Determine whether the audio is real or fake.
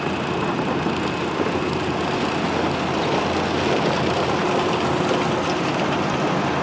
real